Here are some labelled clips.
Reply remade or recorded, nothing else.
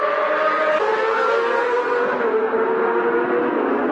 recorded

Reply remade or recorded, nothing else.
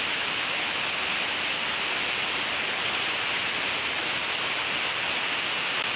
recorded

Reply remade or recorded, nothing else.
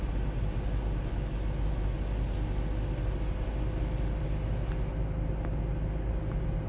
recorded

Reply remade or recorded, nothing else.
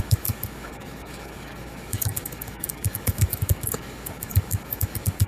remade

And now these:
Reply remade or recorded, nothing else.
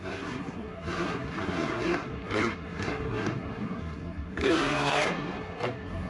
remade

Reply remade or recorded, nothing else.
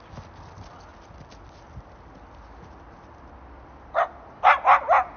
recorded